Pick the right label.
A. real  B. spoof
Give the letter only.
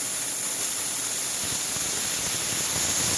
A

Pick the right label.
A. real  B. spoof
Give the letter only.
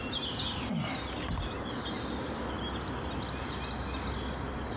A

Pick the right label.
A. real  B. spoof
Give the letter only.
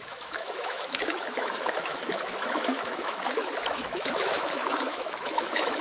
B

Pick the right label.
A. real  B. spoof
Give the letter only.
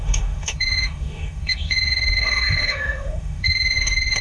B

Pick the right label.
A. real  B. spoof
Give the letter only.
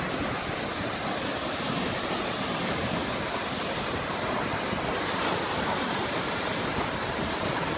A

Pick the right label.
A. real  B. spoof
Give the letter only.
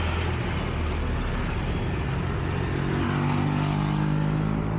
A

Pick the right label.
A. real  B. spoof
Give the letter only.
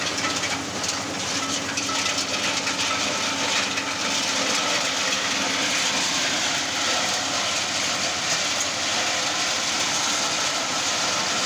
A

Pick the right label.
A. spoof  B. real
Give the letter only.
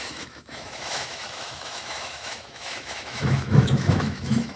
A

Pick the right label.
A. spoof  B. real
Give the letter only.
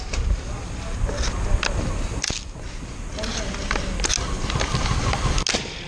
B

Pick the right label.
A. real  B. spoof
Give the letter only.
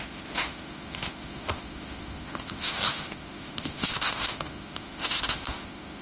B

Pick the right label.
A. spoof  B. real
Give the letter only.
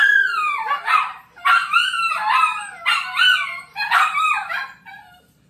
B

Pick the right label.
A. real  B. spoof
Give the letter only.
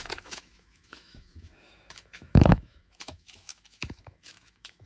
B